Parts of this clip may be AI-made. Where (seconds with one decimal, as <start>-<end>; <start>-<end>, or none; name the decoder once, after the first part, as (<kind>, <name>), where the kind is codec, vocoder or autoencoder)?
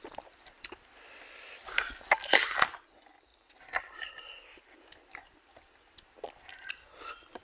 none